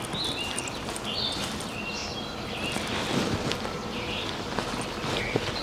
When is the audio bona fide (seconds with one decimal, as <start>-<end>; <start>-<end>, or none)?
0.0-5.6